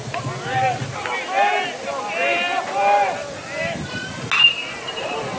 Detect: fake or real real